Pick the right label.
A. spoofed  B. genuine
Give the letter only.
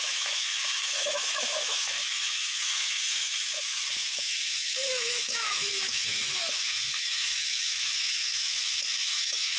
A